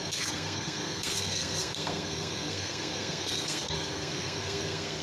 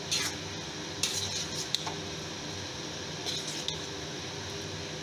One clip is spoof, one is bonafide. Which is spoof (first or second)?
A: first